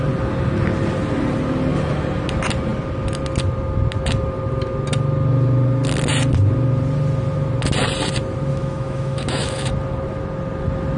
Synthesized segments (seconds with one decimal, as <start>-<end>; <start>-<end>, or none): 8.5-9.7